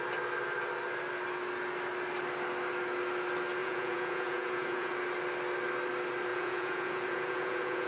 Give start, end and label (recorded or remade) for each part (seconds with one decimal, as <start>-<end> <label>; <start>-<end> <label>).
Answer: 0.0-3.6 recorded; 3.6-4.9 remade; 4.9-6.3 recorded; 6.3-7.9 remade